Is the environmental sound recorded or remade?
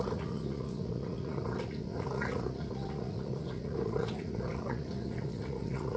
remade